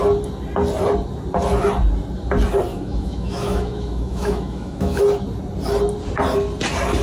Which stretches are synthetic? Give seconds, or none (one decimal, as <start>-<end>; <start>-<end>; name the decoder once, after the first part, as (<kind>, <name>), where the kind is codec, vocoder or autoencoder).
2.7-5.0 (autoencoder, DAC-VAE)